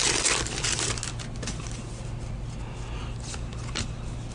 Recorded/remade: recorded